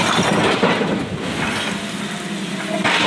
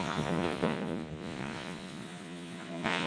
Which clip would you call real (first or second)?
first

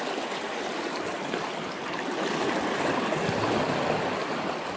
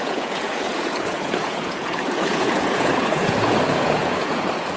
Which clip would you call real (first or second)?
first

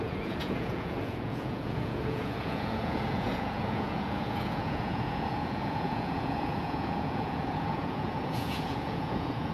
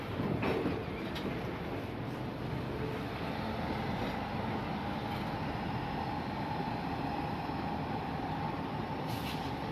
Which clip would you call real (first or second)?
second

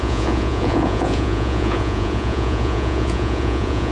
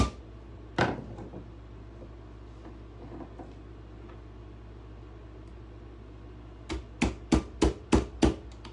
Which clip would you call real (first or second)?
second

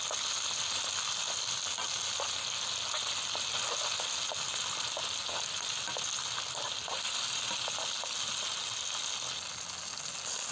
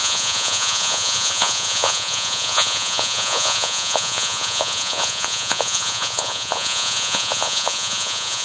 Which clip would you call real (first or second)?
first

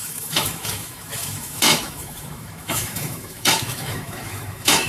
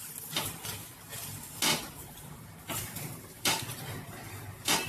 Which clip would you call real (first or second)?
second